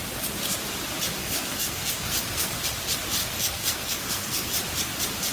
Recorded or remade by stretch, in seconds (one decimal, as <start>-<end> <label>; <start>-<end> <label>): 0.0-1.2 recorded; 1.2-2.6 remade; 2.6-3.2 recorded; 3.2-4.5 remade; 4.5-5.3 recorded